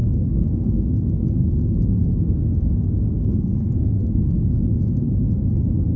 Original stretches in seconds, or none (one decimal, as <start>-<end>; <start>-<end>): 0.8-1.4; 4.6-6.0